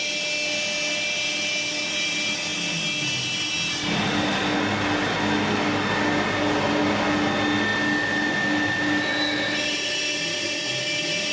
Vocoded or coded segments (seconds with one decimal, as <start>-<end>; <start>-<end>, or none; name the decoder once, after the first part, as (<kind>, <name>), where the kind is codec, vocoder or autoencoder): none